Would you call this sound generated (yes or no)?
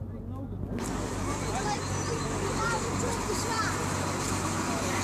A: no